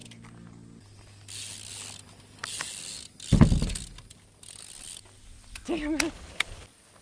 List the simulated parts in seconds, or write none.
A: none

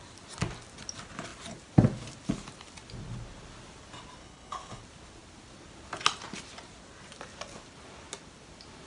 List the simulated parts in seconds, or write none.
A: 4.2-4.8 (codec, HILCodec)

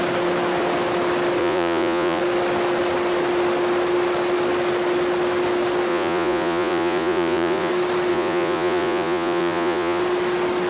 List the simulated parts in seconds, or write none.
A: 1.4-2.2 (vocoder, Vocos); 5.9-7.7; 8.1-10.0

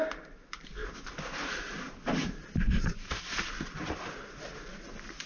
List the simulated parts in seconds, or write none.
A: none

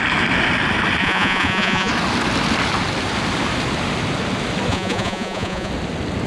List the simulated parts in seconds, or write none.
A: 1.0-1.9 (vocoder, Vocos); 4.7-5.7

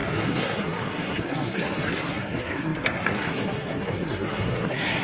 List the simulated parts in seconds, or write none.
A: 0.0-5.0 (codec, SNAC)

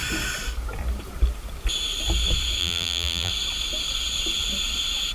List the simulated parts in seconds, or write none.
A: 2.6-3.3 (vocoder, BigVGAN v2)